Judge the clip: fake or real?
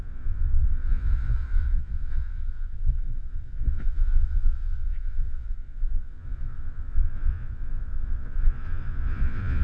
fake